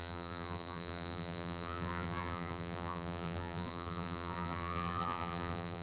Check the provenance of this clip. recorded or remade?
remade